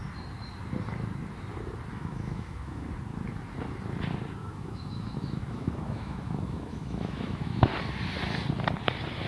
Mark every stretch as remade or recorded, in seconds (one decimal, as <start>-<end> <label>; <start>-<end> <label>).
0.0-1.9 recorded; 1.9-2.9 remade; 2.9-4.4 recorded; 4.4-7.7 remade; 7.7-9.3 recorded